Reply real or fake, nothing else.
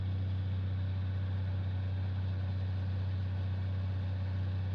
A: real